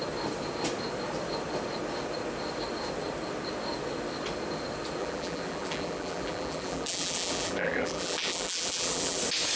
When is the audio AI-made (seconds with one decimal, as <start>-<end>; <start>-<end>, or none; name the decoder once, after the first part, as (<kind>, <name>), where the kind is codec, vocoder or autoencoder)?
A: 5.0-9.2 (vocoder, BigVGAN v2)